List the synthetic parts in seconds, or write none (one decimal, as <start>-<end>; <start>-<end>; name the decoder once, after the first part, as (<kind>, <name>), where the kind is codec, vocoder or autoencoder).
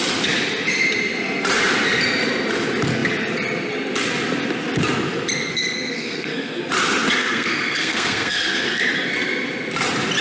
5.5-6.6 (codec, SNAC); 7.2-8.8